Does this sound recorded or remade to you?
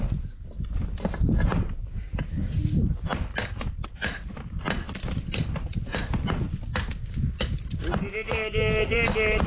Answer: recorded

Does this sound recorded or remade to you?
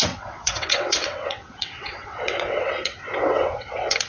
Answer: remade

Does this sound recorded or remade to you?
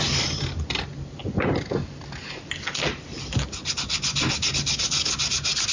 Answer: recorded